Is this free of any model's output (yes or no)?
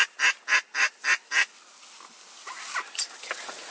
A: yes